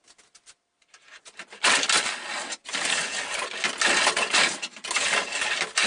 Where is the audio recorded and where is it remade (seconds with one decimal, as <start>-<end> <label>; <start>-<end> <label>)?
0.0-5.9 recorded

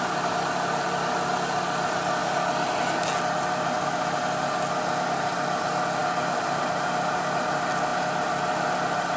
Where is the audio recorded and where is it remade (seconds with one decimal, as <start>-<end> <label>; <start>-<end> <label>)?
0.0-9.2 recorded

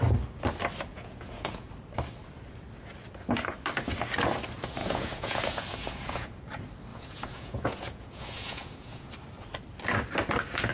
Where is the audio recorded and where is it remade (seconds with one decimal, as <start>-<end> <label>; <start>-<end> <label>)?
0.0-0.9 recorded; 0.9-1.7 remade; 1.7-4.8 recorded; 4.8-6.3 remade; 6.3-6.9 recorded; 6.9-9.1 remade; 9.1-10.7 recorded